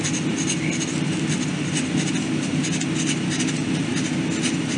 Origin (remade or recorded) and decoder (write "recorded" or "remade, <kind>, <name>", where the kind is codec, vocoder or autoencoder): recorded